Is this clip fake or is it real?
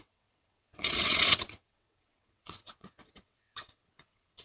fake